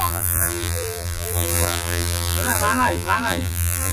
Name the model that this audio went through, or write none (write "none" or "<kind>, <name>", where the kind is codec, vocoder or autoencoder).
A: vocoder, BigVGAN v2